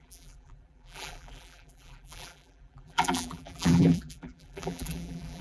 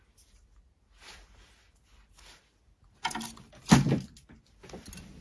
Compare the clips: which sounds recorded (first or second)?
second